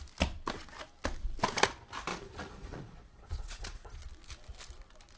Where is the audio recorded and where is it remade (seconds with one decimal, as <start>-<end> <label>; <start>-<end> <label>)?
0.0-2.1 recorded; 2.1-4.0 remade; 4.0-5.2 recorded